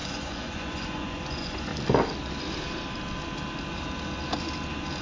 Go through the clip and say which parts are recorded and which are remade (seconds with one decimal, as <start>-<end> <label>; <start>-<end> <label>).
0.0-1.7 remade; 1.7-5.0 recorded